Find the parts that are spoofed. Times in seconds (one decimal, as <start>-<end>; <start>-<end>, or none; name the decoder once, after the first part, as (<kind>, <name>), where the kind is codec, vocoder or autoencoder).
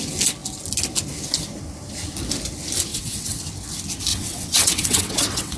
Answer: 2.9-3.4 (vocoder, WaveNeXt); 4.1-5.6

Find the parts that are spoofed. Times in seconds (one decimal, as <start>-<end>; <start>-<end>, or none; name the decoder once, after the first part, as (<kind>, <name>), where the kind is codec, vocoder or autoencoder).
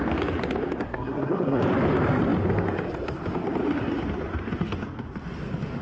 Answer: 0.8-1.6 (codec, SNAC)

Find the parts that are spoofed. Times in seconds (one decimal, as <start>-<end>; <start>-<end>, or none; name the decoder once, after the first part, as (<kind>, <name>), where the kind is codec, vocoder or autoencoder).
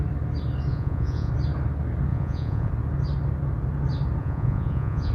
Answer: 0.7-1.3 (vocoder, Vocos); 2.1-2.7; 4.2-5.1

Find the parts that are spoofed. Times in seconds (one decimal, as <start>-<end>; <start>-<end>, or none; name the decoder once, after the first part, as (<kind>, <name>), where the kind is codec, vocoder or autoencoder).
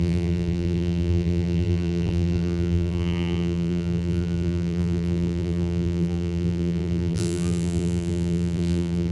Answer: 0.0-9.1 (vocoder, BigVGAN v2)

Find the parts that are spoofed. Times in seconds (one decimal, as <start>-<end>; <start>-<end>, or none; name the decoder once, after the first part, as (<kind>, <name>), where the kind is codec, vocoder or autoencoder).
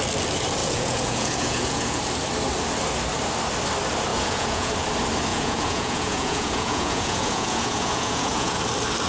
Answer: 0.6-2.0 (vocoder, Vocos); 4.1-4.7; 5.3-8.6